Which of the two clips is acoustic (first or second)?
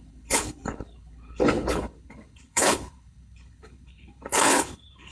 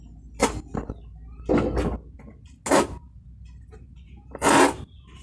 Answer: second